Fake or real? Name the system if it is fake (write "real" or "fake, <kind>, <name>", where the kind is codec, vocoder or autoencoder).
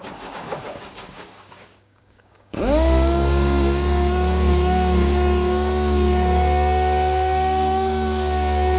fake, codec, DAC